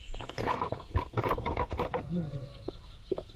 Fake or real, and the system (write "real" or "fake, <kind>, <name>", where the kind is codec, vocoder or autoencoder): fake, codec, SNAC